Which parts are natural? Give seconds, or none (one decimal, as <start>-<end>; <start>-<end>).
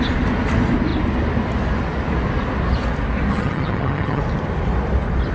0.0-3.3; 4.2-5.3